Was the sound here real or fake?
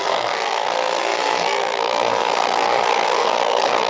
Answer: fake